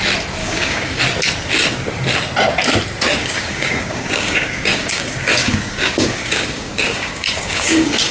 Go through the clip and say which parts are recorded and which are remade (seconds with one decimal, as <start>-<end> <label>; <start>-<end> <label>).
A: 0.0-0.4 recorded; 0.4-1.0 remade; 1.0-3.2 recorded; 3.2-8.1 remade

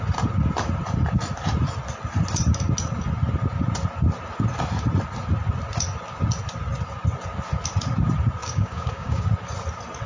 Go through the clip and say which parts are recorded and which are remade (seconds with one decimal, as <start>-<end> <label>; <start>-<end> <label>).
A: 0.0-8.4 recorded; 8.4-9.3 remade; 9.3-10.1 recorded

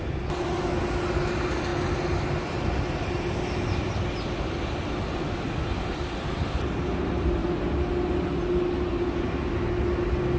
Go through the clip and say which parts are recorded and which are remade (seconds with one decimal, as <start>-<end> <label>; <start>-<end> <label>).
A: 0.0-10.4 recorded

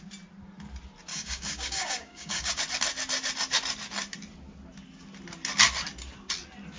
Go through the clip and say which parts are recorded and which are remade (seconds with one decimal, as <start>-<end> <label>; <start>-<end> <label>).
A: 0.0-1.1 recorded; 1.1-2.6 remade; 2.6-6.8 recorded

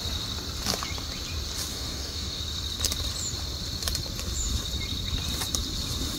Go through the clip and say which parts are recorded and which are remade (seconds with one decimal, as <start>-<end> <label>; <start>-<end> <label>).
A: 0.0-1.7 recorded; 1.7-2.4 remade; 2.4-6.2 recorded

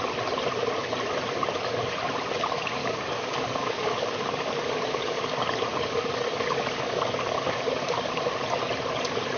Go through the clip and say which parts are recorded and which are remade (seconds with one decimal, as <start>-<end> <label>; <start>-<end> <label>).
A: 0.0-2.8 recorded; 2.8-5.2 remade; 5.2-5.7 recorded; 5.7-8.2 remade; 8.2-9.4 recorded

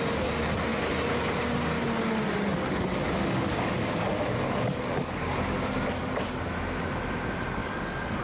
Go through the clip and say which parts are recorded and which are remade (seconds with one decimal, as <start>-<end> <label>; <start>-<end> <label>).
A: 0.0-2.5 recorded; 2.5-5.3 remade; 5.3-7.6 recorded; 7.6-8.2 remade